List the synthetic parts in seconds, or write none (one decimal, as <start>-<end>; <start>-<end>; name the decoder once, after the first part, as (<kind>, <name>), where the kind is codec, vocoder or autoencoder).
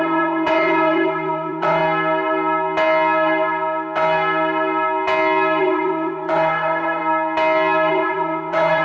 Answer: 0.0-1.8 (vocoder, Vocos); 5.6-7.0; 7.9-8.8